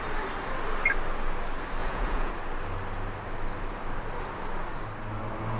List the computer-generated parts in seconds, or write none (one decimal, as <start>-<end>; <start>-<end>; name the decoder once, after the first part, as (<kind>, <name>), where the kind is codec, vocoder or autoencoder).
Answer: 1.8-2.3 (vocoder, Vocos)